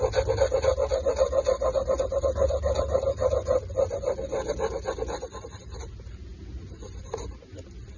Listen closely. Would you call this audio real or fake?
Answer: real